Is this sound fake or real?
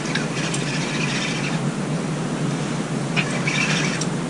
real